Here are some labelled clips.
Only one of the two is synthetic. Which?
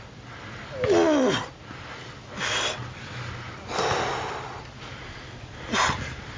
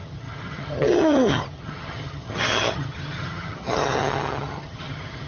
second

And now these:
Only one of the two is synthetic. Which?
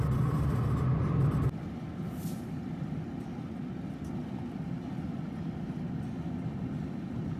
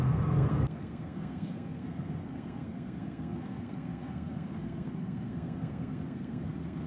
second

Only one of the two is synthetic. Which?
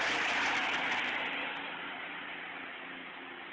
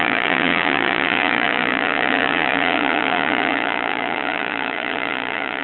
second